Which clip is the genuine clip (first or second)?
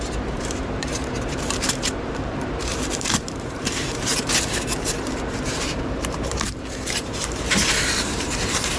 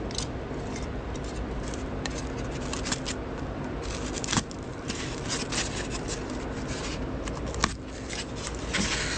second